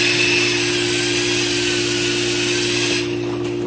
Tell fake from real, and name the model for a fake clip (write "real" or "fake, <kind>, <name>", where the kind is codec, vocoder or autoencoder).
real